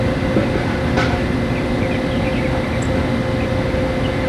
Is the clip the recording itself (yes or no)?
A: yes